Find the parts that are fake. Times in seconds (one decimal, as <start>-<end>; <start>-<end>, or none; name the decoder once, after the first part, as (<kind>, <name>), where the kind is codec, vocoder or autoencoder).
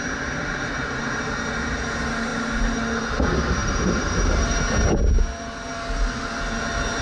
0.4-1.0 (vocoder, BigVGAN v2); 3.6-4.6